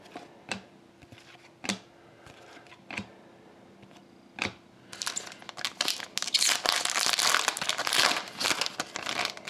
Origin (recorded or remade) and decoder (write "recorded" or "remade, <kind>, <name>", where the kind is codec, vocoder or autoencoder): recorded